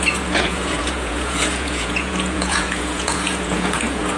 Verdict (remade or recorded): remade